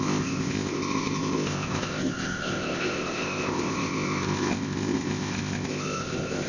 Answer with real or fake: fake